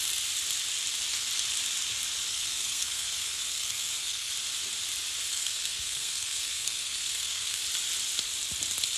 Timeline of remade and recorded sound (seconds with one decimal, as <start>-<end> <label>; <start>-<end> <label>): 0.0-2.3 recorded; 2.3-4.3 remade; 4.3-5.3 recorded; 5.3-7.6 remade; 7.6-9.0 recorded